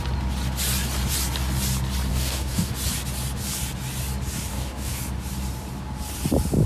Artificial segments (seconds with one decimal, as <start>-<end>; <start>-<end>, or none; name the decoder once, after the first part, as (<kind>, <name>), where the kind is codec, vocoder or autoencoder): 2.1-2.7 (codec, DAC); 4.5-5.0